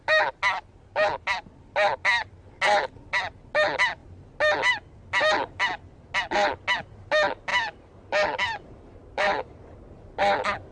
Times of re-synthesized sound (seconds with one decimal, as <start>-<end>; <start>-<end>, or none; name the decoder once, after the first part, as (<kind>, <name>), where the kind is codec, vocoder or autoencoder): 7.5-9.6 (vocoder, BigVGAN v2)